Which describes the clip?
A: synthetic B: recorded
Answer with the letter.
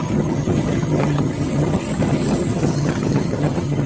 A